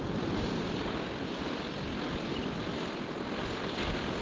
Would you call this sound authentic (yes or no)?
yes